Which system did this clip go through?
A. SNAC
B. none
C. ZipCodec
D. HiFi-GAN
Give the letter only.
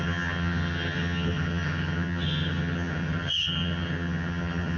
D